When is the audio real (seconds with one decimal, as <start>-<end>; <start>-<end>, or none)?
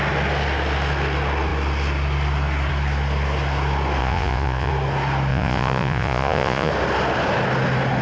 0.0-4.0; 4.7-5.3; 6.7-8.0